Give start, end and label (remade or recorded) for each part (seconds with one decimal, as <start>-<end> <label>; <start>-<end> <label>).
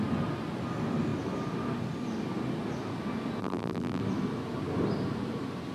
0.0-3.4 recorded; 3.4-4.0 remade; 4.0-5.7 recorded